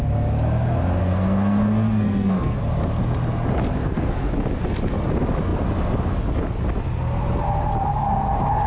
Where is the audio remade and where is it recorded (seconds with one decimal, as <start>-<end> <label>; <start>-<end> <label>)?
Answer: 0.0-1.0 recorded; 1.0-2.6 remade; 2.6-3.8 recorded; 3.8-4.3 remade; 4.3-8.7 recorded